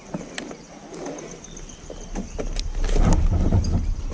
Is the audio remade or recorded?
recorded